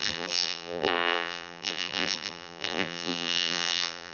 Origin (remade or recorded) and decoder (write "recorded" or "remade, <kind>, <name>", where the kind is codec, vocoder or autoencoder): remade, vocoder, BigVGAN v2